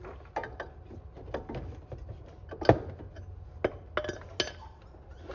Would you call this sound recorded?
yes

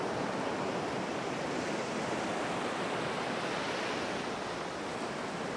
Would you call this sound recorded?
yes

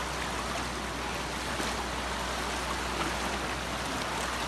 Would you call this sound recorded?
yes